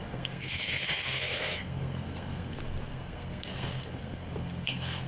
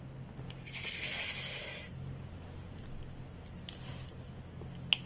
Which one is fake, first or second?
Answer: first